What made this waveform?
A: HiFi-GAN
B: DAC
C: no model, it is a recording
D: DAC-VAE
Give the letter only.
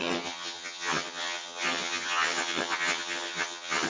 A